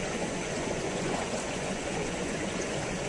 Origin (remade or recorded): remade